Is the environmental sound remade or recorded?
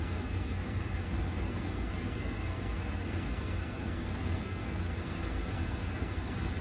remade